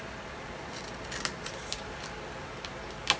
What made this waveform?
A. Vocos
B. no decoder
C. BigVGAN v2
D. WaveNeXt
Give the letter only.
B